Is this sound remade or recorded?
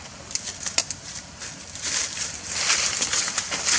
recorded